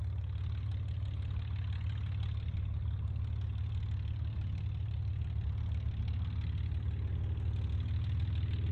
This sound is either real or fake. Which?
real